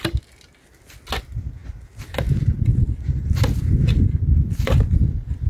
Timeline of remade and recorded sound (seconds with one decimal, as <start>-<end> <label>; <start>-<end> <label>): 0.0-5.5 recorded